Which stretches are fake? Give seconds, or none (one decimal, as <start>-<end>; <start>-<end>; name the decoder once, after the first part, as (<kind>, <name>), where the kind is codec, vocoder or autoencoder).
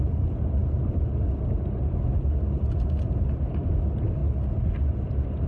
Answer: none